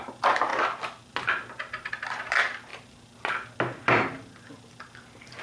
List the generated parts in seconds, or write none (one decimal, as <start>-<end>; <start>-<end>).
0.0-0.5; 1.9-2.7; 4.7-5.4